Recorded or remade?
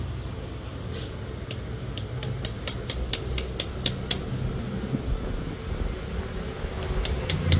recorded